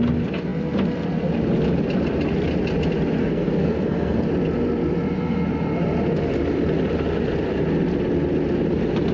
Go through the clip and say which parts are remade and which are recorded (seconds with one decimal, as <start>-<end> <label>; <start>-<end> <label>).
0.0-3.2 recorded; 3.2-4.3 remade; 4.3-9.1 recorded